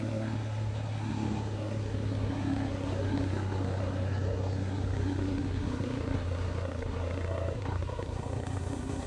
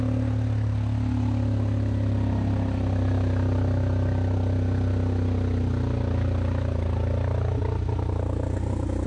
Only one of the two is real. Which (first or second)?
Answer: second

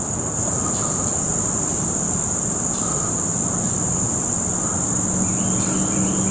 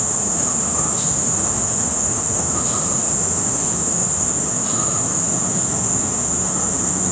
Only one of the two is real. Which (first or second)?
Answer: first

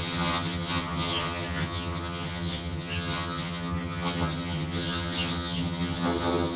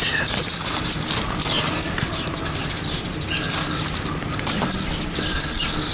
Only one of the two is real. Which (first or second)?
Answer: second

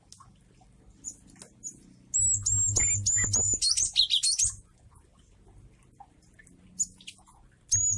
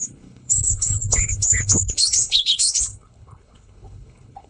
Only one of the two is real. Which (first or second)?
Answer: first